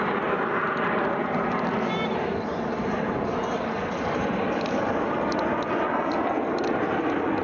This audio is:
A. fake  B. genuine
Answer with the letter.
B